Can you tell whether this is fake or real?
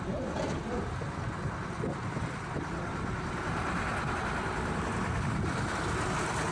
real